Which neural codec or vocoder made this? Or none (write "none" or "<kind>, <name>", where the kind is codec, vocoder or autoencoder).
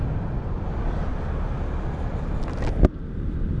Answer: none